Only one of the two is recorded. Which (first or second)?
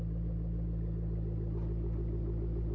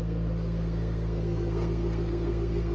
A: first